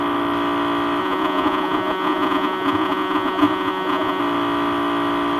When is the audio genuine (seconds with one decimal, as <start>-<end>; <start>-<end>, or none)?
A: 0.0-1.0; 4.2-5.4